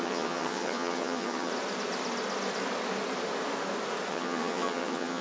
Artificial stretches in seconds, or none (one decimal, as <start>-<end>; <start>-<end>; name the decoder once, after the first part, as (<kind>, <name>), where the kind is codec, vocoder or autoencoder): 0.0-1.5 (vocoder, HiFi-GAN); 4.1-5.2